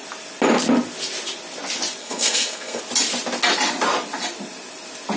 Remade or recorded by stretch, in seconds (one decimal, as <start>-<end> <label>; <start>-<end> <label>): 0.0-2.0 recorded; 2.0-2.8 remade; 2.8-5.2 recorded